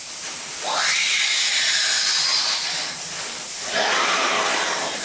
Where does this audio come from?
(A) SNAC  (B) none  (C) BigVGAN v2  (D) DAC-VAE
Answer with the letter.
C